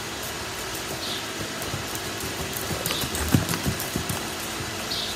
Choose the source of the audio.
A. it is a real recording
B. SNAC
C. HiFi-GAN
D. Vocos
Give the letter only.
A